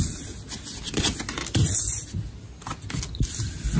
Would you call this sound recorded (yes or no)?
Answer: yes